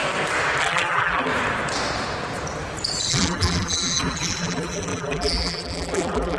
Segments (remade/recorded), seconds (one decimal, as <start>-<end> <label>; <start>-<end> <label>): 0.0-0.6 recorded; 0.6-1.3 remade; 1.3-3.1 recorded; 3.1-6.4 remade